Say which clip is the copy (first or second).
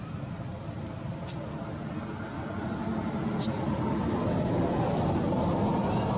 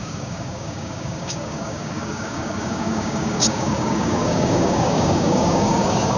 second